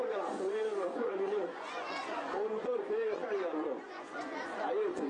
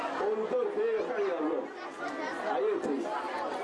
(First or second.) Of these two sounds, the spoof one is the first